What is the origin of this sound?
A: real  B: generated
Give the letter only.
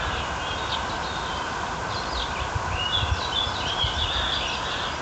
A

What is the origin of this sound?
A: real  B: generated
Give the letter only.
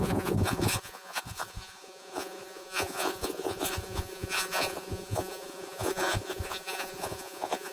B